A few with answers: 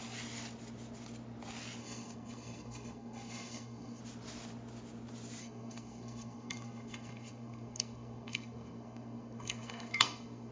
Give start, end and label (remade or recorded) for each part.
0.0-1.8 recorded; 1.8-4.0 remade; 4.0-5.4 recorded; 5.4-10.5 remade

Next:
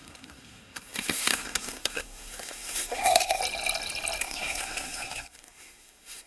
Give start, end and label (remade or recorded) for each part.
0.0-3.4 remade; 3.4-4.2 recorded; 4.2-6.3 remade

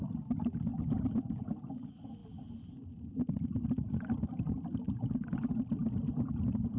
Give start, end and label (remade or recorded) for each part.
0.0-6.8 recorded

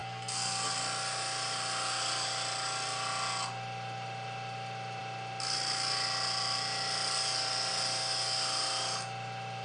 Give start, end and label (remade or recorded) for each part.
0.0-0.7 remade; 0.7-9.6 recorded

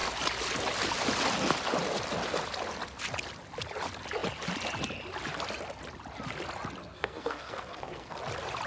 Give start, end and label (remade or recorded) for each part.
0.0-6.8 recorded; 6.8-8.2 remade; 8.2-8.7 recorded

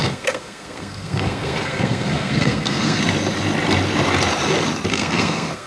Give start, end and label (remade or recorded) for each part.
0.0-3.0 remade; 3.0-4.9 recorded; 4.9-5.7 remade

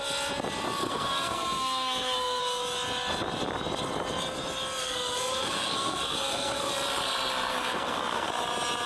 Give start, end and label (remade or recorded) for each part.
0.0-0.8 recorded; 0.8-2.4 remade; 2.4-4.8 recorded; 4.8-6.7 remade; 6.7-7.5 recorded; 7.5-8.3 remade; 8.3-8.9 recorded

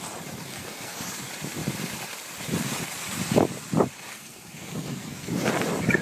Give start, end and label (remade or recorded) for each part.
0.0-0.5 recorded; 0.5-1.0 remade; 1.0-4.1 recorded; 4.1-5.3 remade; 5.3-6.0 recorded